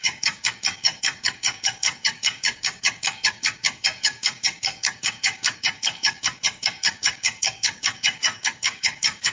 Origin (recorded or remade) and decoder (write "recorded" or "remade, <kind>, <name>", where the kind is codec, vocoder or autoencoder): remade, codec, DAC